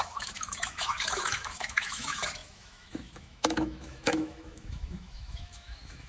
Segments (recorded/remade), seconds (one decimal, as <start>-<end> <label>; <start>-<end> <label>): 0.0-6.1 remade